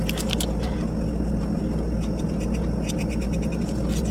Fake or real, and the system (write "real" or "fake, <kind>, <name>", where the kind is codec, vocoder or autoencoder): real